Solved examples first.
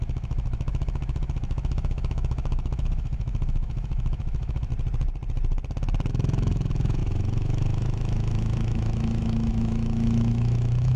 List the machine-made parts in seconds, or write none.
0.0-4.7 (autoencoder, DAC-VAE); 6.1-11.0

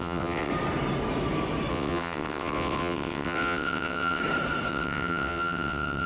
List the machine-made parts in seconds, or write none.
0.0-0.5 (vocoder, WaveNeXt); 1.7-4.2; 4.7-6.1